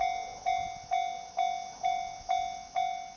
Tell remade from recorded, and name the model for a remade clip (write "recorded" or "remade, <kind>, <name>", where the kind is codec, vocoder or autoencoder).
recorded